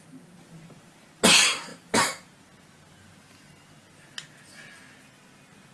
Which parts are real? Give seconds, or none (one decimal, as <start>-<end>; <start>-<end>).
0.0-5.7